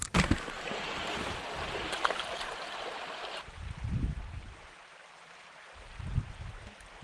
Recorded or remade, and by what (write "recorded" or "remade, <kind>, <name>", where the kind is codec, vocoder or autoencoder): recorded